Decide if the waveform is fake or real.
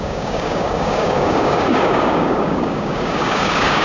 fake